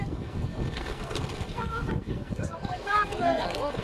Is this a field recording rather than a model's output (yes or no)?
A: no